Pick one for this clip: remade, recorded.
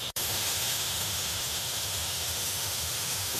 remade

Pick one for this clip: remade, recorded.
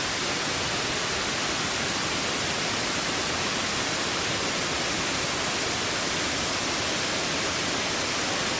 recorded